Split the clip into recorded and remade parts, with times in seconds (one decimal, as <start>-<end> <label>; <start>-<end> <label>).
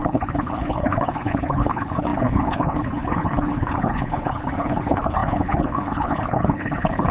0.0-7.1 remade